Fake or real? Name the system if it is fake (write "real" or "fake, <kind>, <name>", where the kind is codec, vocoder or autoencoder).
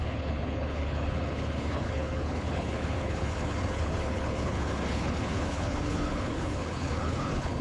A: fake, codec, HILCodec